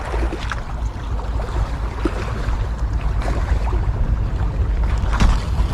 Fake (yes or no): no